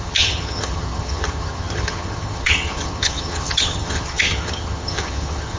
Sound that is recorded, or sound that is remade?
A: remade